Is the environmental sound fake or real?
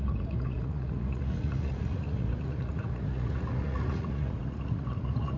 fake